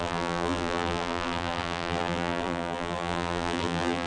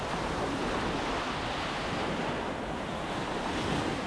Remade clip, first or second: first